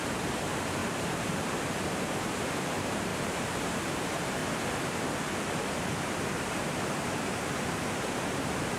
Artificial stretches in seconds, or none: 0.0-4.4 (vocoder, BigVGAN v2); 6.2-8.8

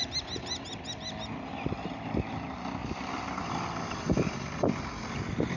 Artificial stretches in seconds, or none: 2.8-4.7 (vocoder, BigVGAN v2)

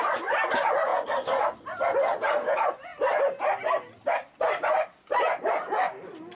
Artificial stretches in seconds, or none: none

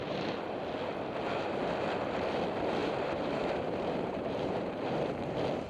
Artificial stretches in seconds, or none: 2.8-5.7 (vocoder, BigVGAN v2)